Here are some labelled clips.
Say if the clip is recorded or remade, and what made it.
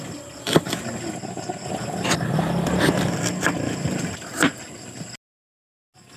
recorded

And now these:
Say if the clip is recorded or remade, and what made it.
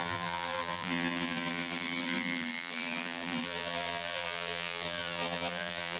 remade, vocoder, BigVGAN v2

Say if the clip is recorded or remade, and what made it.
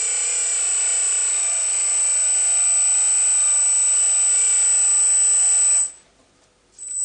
recorded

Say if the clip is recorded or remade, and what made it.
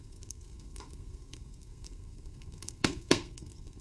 remade, codec, SNAC